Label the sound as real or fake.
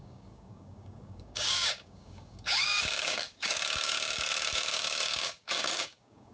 fake